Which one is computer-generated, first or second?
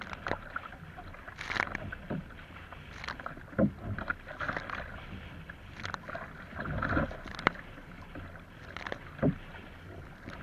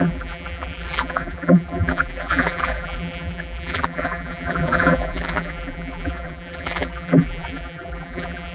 second